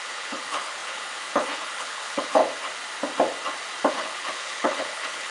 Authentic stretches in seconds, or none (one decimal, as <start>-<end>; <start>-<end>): 2.4-3.9